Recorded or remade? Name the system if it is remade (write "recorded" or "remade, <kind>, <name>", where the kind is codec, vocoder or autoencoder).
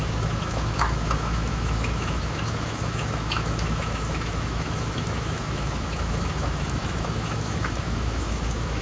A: remade, autoencoder, DAC-VAE